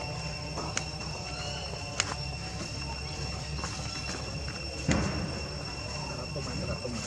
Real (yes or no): yes